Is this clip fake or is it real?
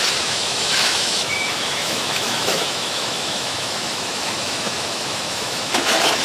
fake